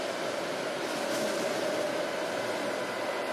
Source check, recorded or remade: recorded